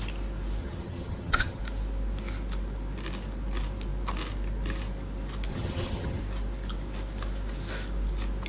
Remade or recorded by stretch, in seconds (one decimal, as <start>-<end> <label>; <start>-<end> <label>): 0.0-0.6 recorded; 0.6-1.6 remade; 1.6-5.5 recorded; 5.5-6.2 remade; 6.2-8.5 recorded